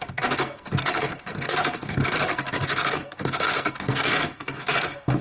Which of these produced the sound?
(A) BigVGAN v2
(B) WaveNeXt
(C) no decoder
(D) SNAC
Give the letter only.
D